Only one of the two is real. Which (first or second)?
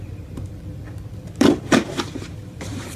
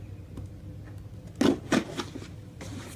second